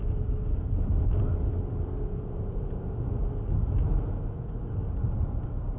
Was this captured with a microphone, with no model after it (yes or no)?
yes